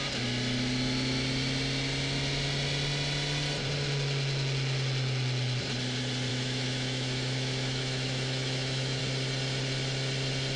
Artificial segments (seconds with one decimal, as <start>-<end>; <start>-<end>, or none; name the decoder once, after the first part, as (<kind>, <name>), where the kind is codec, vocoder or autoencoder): 6.3-9.0 (autoencoder, DAC-VAE)